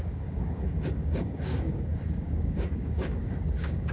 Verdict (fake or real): fake